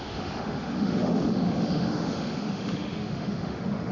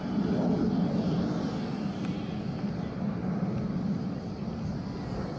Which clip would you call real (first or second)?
second